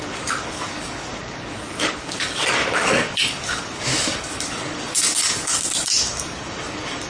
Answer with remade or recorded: remade